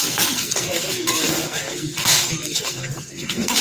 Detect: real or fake fake